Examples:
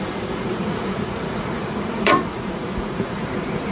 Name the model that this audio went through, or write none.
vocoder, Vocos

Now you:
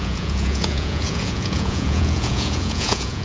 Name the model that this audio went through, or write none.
vocoder, Vocos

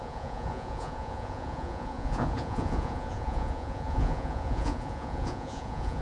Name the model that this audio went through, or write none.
vocoder, Vocos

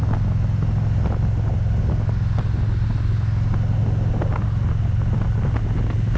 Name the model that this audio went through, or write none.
none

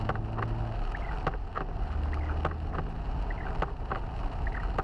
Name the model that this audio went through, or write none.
none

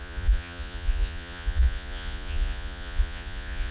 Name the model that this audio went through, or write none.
vocoder, Vocos